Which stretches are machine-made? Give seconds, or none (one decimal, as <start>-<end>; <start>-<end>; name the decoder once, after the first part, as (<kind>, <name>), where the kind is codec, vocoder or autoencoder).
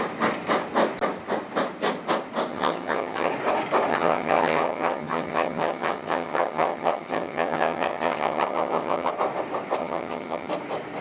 2.5-3.3 (vocoder, HiFi-GAN); 3.9-9.1; 9.8-10.5